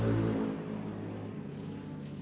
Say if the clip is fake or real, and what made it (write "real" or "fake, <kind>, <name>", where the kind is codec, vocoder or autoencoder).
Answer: real